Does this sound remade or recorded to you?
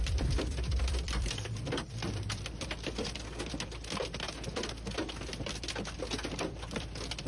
remade